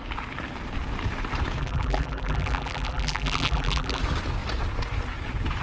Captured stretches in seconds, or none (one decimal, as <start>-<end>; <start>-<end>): 0.0-1.6; 4.0-5.6